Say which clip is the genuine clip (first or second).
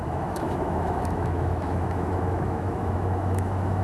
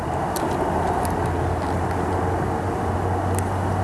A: second